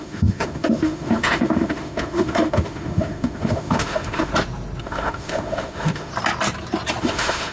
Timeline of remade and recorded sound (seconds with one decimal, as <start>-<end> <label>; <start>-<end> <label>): 0.0-4.3 remade; 4.3-4.8 recorded; 4.8-6.1 remade; 6.1-7.0 recorded; 7.0-7.5 remade